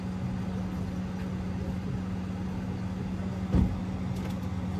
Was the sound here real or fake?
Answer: real